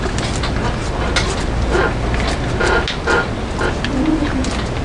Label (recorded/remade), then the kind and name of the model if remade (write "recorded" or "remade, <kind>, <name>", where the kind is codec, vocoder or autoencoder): recorded